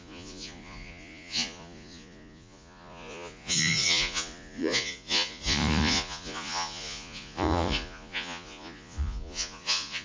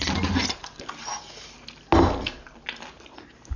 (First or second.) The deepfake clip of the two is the first